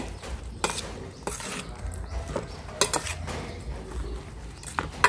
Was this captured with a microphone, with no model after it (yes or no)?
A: yes